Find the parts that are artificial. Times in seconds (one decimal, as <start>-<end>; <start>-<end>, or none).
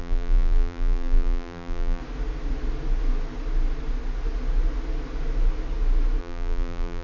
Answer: 0.0-2.0; 6.2-7.0